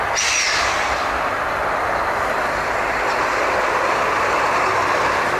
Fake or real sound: real